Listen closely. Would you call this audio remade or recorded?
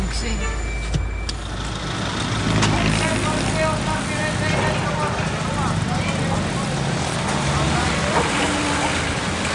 recorded